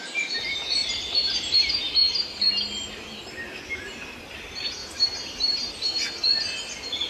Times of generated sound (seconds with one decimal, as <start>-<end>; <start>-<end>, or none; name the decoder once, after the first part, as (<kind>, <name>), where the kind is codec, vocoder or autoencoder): 0.0-2.0 (vocoder, BigVGAN v2); 2.9-4.8